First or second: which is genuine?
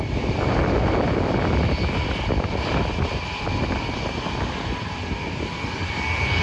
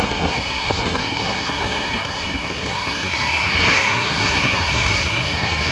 first